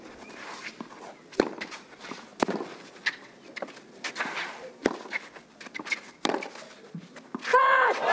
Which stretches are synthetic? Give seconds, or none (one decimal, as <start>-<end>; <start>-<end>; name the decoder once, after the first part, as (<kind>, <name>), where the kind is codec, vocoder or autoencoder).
7.5-8.1 (vocoder, WaveNeXt)